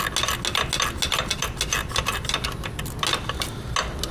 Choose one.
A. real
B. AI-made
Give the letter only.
A